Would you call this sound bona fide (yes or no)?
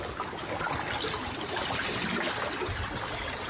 yes